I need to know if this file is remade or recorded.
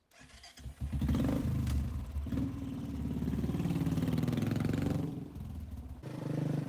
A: recorded